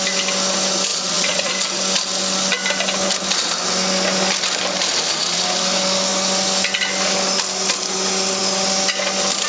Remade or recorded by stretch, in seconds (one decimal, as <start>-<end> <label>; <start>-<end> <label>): 0.0-0.9 recorded; 0.9-1.5 remade; 1.5-9.5 recorded